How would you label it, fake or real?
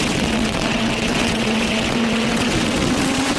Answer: fake